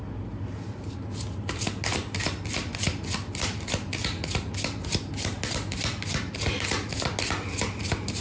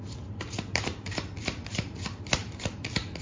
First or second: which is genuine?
first